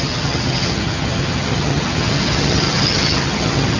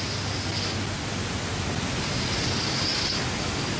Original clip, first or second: second